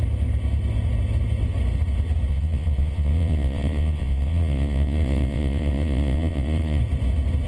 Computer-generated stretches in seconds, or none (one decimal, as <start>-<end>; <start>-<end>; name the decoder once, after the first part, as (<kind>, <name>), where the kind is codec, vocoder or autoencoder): 2.3-6.8 (vocoder, Vocos)